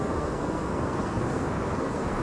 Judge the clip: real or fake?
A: fake